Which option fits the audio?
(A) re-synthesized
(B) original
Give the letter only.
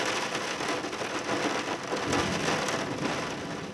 B